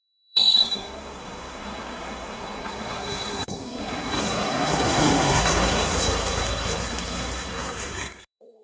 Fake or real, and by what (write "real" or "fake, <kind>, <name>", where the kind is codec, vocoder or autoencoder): fake, codec, SNAC